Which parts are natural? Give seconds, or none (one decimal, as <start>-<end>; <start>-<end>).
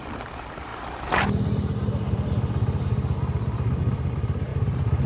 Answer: 0.0-5.1